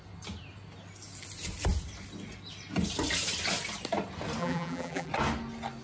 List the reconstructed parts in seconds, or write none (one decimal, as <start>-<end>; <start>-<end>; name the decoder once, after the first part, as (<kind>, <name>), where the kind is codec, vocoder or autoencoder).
4.4-5.1 (vocoder, BigVGAN v2)